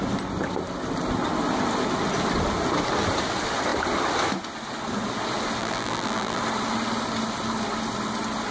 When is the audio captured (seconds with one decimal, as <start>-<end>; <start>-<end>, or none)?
0.0-5.6; 6.4-8.5